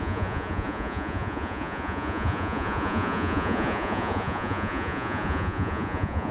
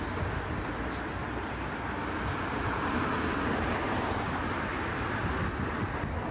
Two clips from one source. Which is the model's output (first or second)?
first